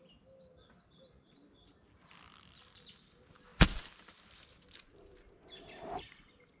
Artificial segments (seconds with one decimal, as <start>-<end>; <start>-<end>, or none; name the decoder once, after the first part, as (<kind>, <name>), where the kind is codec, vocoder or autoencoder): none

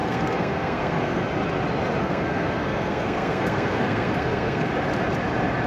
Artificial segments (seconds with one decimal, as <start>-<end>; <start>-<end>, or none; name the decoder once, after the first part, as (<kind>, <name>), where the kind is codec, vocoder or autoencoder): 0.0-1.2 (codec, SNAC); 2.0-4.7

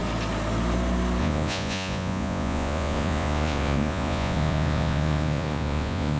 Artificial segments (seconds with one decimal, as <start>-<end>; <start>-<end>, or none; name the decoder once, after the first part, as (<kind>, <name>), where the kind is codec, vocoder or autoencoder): 1.2-6.2 (vocoder, Vocos)

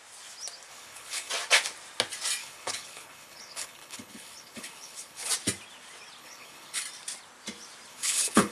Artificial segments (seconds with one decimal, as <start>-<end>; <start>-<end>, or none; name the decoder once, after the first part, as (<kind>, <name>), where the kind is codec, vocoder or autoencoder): 0.7-1.3 (codec, HILCodec); 2.4-5.3; 6.2-6.8; 7.9-8.5

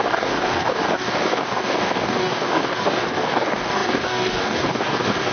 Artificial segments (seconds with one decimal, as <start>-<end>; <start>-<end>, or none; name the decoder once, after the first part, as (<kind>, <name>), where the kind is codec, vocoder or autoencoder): 0.0-5.3 (codec, DAC)